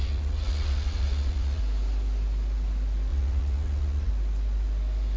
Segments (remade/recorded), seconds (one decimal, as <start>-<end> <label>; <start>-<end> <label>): 0.0-1.6 remade; 1.6-3.1 recorded; 3.1-4.1 remade; 4.1-5.2 recorded